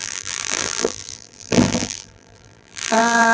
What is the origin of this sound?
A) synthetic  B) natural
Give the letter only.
A